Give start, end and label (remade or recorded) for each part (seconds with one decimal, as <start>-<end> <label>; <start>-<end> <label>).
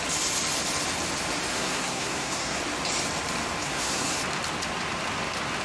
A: 0.0-1.5 recorded; 1.5-2.6 remade; 2.6-3.6 recorded; 3.6-4.2 remade; 4.2-5.6 recorded